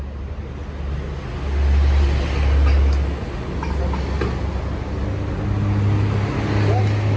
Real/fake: real